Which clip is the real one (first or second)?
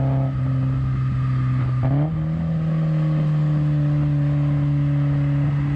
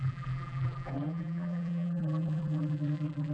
first